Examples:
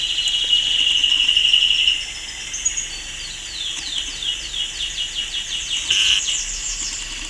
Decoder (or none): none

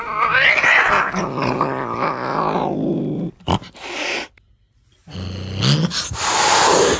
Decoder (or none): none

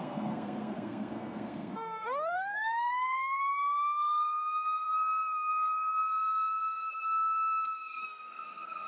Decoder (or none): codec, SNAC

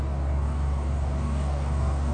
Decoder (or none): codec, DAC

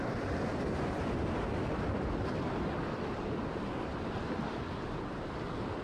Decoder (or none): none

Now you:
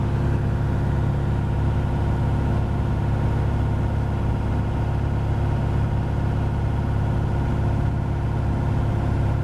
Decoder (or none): none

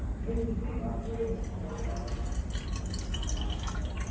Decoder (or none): none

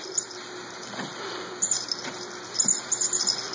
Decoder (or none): none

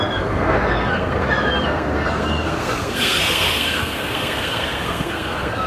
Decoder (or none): codec, SNAC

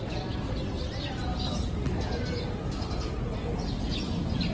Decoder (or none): none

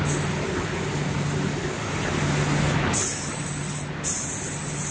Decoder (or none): none